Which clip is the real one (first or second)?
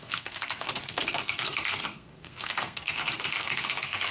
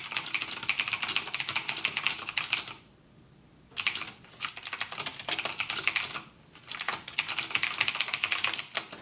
second